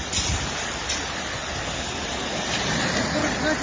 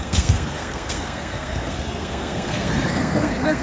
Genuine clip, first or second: first